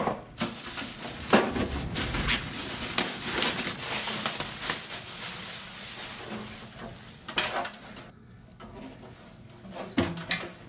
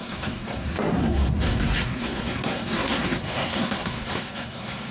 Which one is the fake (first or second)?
second